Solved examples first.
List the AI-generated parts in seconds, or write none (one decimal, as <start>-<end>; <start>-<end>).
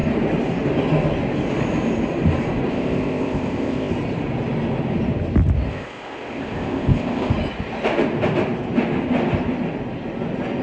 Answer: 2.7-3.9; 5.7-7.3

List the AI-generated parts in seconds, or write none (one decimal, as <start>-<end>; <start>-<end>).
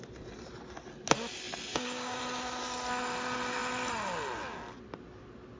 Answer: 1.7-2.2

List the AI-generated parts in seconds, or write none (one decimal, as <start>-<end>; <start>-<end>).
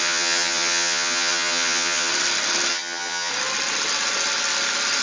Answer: 0.0-2.1; 2.7-3.3